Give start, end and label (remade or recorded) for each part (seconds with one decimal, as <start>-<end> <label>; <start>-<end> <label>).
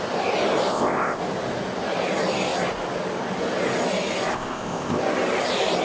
0.0-0.7 recorded; 0.7-1.2 remade; 1.2-4.3 recorded; 4.3-5.0 remade; 5.0-5.8 recorded